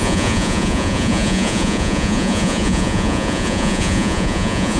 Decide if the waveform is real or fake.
fake